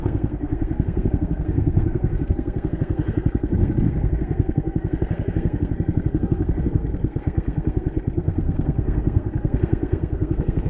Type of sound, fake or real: fake